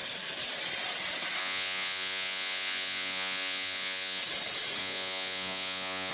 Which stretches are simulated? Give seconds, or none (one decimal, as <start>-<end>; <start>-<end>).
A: 1.4-4.2; 4.8-6.1